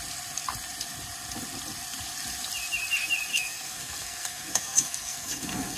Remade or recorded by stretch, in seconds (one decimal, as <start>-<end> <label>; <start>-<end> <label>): 0.0-3.3 recorded; 3.3-5.8 remade

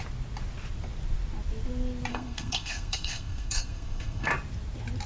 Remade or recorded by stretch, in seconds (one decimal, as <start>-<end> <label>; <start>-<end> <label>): 0.0-2.1 recorded; 2.1-4.3 remade; 4.3-5.1 recorded

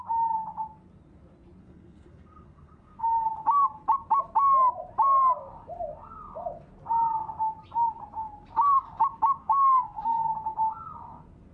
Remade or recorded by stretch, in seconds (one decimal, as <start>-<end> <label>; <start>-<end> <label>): 0.0-1.6 recorded; 1.6-3.3 remade; 3.3-9.4 recorded; 9.4-10.2 remade; 10.2-11.5 recorded

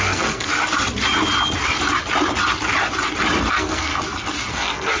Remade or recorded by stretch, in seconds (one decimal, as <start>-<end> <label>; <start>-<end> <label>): 0.0-0.5 remade; 0.5-3.5 recorded; 3.5-3.9 remade; 3.9-4.5 recorded; 4.5-5.0 remade

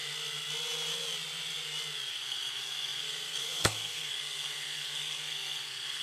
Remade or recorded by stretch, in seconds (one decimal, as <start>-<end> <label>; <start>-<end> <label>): 0.0-2.1 recorded; 2.1-6.0 remade

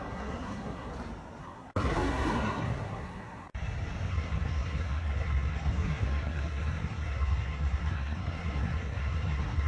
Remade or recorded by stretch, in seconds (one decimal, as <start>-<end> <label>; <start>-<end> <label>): 0.0-0.9 remade; 0.9-1.4 recorded; 1.4-3.5 remade; 3.5-4.1 recorded; 4.1-9.7 remade